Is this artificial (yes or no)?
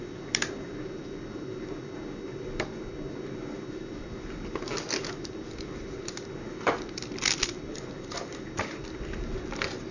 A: no